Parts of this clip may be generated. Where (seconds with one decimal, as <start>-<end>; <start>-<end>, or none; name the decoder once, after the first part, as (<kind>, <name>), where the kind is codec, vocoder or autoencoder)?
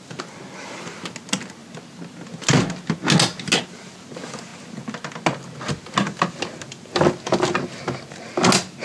none